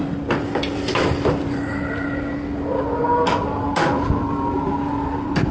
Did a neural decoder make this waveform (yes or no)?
no